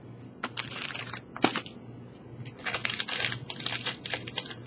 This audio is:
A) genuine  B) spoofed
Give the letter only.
A